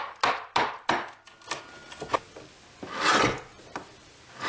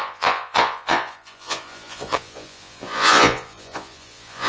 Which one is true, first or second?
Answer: first